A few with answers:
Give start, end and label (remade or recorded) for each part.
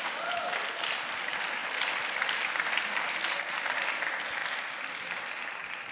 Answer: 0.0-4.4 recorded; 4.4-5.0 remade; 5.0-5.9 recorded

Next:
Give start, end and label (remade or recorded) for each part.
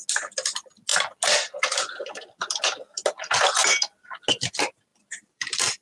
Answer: 0.0-4.9 recorded; 4.9-5.8 remade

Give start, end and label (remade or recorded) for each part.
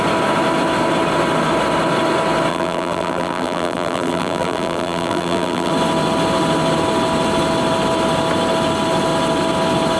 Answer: 0.0-2.5 recorded; 2.5-5.7 remade; 5.7-10.0 recorded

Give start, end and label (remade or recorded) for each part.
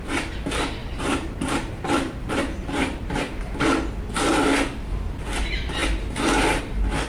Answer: 0.0-0.8 recorded; 0.8-3.4 remade; 3.4-7.1 recorded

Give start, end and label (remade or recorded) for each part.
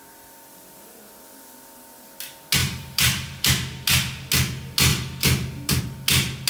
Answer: 0.0-2.6 recorded; 2.6-3.5 remade; 3.5-6.5 recorded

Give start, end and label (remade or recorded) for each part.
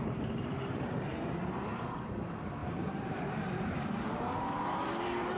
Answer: 0.0-5.4 remade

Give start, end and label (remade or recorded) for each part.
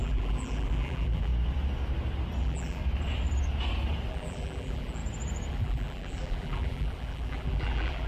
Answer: 0.0-1.3 remade; 1.3-2.4 recorded; 2.4-2.8 remade; 2.8-4.1 recorded; 4.1-5.0 remade; 5.0-5.5 recorded; 5.5-8.1 remade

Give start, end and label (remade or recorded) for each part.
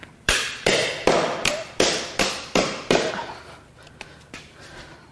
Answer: 0.0-3.1 remade; 3.1-5.1 recorded